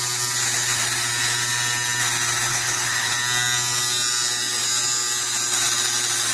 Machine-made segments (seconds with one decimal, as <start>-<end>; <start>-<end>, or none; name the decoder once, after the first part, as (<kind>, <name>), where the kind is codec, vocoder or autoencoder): 2.5-3.1 (codec, HILCodec)